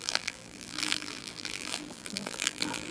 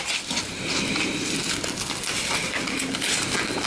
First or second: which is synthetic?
first